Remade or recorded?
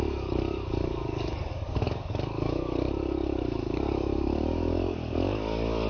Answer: remade